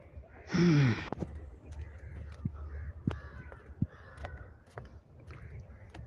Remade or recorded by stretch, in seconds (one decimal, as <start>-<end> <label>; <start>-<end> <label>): 0.0-4.1 recorded; 4.1-4.6 remade; 4.6-6.1 recorded